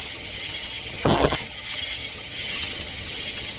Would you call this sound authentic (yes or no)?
no